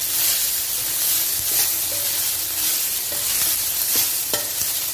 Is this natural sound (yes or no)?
no